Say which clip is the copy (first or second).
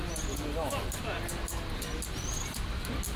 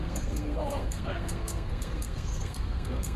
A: second